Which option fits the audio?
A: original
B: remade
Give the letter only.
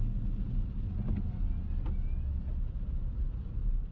A